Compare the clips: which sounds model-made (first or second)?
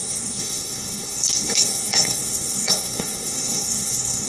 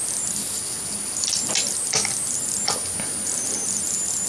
first